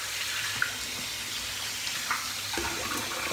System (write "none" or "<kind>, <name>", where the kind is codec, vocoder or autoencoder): none